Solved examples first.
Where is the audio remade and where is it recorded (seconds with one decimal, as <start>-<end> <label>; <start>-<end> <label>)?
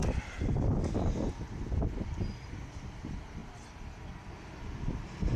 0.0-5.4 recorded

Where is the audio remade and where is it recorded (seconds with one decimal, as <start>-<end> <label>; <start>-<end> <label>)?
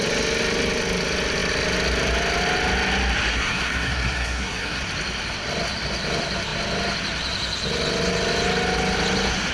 0.0-3.3 recorded; 3.3-4.8 remade; 4.8-9.5 recorded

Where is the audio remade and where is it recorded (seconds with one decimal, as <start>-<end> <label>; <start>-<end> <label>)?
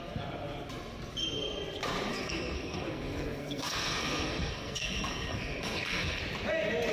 0.0-2.1 recorded; 2.1-6.2 remade; 6.2-6.9 recorded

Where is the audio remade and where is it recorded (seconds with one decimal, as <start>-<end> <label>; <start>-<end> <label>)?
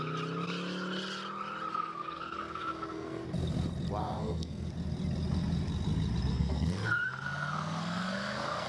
0.0-1.7 recorded; 1.7-3.2 remade; 3.2-4.0 recorded; 4.0-4.7 remade; 4.7-6.3 recorded; 6.3-8.7 remade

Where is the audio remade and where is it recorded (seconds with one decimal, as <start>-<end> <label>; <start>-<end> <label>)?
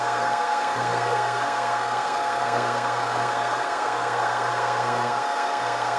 0.0-6.0 remade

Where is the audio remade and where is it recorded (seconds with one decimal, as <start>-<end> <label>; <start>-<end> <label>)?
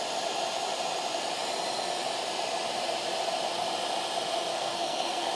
0.0-4.5 recorded; 4.5-5.3 remade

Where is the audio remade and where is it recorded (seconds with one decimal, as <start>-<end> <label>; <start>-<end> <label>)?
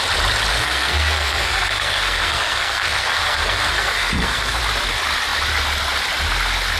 0.0-0.5 recorded; 0.5-4.6 remade; 4.6-6.8 recorded